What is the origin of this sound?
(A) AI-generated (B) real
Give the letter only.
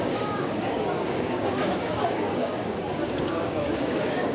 A